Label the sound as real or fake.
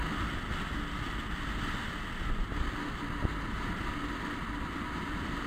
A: real